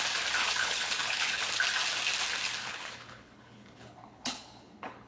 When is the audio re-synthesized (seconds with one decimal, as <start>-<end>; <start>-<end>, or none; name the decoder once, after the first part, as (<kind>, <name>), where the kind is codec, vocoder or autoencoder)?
0.4-1.4 (codec, HILCodec); 2.6-5.1